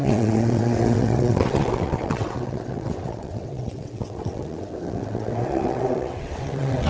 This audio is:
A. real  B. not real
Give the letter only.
B